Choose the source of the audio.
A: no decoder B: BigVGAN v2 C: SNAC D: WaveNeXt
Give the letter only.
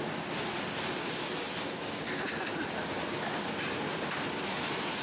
A